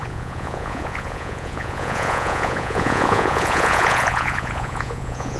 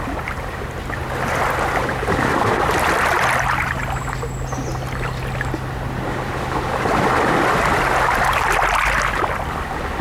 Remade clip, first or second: first